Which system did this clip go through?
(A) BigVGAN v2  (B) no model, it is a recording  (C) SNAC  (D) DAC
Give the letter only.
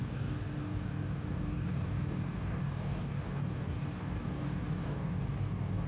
D